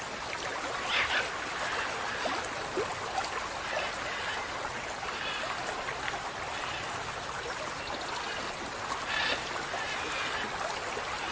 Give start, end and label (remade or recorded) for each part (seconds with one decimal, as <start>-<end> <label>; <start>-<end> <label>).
0.0-11.3 recorded